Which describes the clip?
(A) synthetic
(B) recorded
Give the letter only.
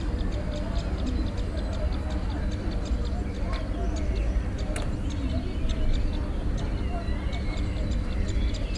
B